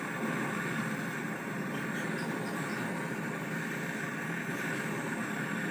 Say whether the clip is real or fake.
real